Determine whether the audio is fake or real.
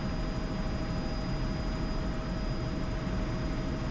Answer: real